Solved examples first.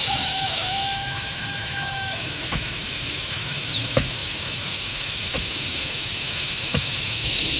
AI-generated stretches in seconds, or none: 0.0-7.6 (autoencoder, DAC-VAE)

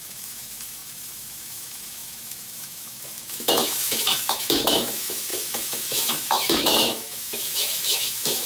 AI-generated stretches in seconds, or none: 0.0-8.5 (autoencoder, DAC-VAE)

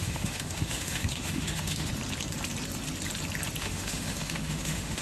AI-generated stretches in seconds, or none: 0.0-1.9 (autoencoder, DAC-VAE); 3.6-5.0